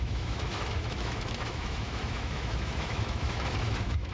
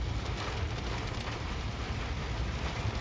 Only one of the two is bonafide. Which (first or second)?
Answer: second